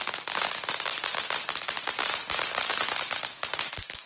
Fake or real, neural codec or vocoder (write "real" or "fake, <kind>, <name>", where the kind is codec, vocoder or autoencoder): real